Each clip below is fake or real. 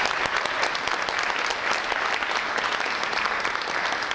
real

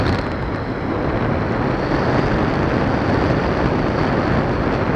real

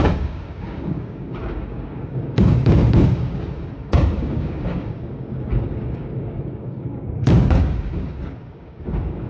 fake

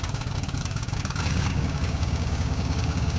fake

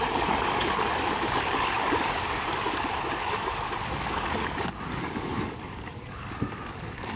fake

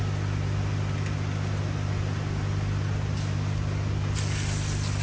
real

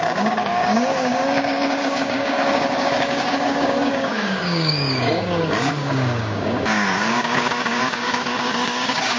fake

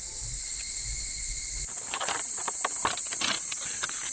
real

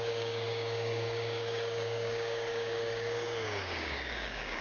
fake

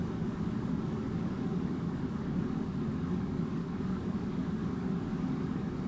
fake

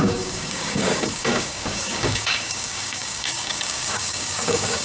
fake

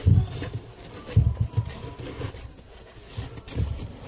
real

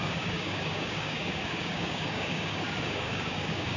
fake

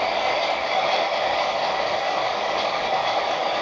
fake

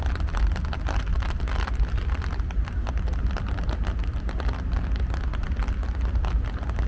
real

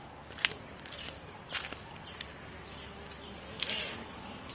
real